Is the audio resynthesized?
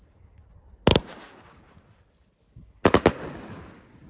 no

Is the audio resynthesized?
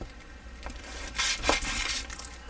no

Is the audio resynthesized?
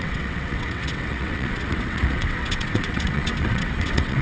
yes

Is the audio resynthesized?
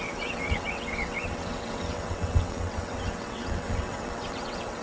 yes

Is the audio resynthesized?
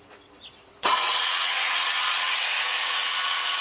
yes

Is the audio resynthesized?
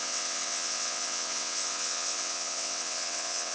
yes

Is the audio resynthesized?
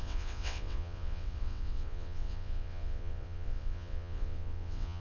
yes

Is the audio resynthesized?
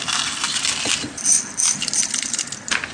no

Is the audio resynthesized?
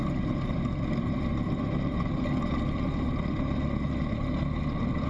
no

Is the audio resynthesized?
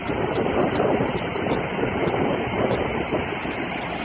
no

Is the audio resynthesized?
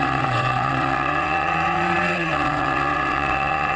yes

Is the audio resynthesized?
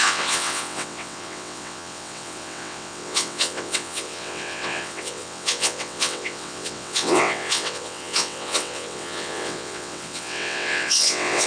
yes